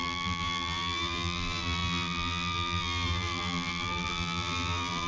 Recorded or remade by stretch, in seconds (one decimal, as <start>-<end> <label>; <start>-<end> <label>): 0.0-5.1 remade